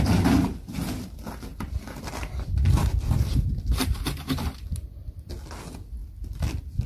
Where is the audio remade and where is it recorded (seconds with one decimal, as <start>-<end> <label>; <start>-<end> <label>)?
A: 0.0-1.5 recorded; 1.5-5.1 remade; 5.1-6.0 recorded; 6.0-6.9 remade